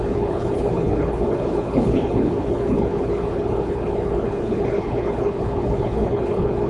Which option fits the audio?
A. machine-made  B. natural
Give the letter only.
A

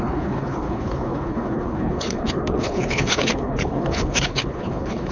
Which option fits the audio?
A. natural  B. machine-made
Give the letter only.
B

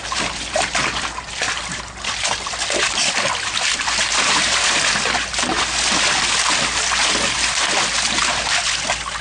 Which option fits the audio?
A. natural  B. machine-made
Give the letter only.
A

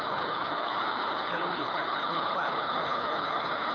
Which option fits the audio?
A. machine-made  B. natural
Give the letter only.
A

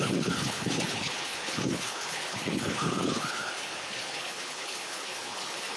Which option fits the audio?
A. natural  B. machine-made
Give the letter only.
B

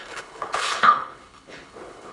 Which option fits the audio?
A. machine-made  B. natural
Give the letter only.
A